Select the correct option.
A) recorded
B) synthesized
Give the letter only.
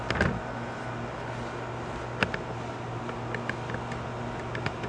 A